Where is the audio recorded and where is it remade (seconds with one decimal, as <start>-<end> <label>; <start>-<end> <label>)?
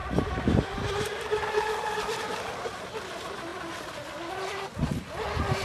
0.0-5.6 recorded